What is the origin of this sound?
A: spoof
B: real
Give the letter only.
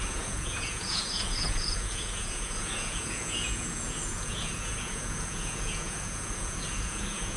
A